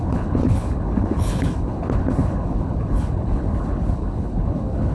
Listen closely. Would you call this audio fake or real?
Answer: fake